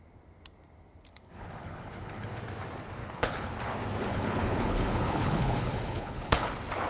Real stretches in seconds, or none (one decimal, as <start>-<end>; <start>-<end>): 0.0-1.1; 2.4-3.0; 3.5-4.1; 6.5-6.9